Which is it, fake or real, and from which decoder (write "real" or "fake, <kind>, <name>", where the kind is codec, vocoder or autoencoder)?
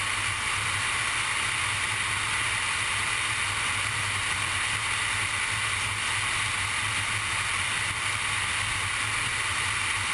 real